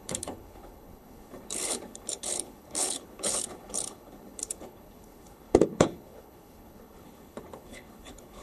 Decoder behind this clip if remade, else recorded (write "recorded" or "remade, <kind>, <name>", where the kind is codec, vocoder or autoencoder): remade, codec, HILCodec